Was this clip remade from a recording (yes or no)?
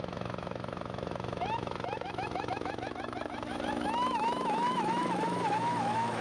yes